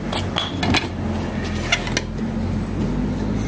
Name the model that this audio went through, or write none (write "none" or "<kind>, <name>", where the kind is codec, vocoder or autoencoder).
none